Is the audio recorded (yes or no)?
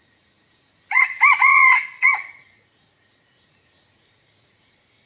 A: no